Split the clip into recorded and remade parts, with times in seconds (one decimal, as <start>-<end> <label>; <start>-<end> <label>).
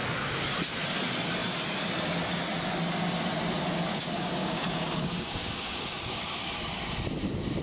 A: 0.0-3.9 recorded; 3.9-6.3 remade; 6.3-7.6 recorded